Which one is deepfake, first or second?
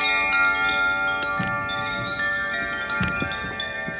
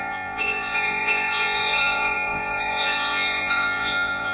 second